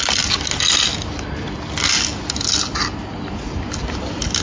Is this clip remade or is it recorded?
recorded